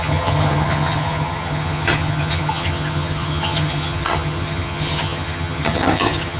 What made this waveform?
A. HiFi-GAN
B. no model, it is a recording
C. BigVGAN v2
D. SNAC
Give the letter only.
A